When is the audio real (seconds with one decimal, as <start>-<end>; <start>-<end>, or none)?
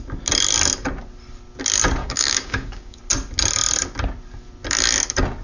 0.0-2.0; 3.0-5.4